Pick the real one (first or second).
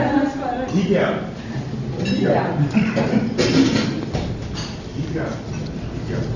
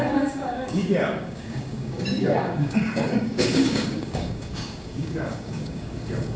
first